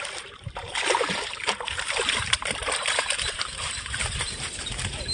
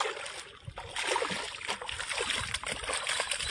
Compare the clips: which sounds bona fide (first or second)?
second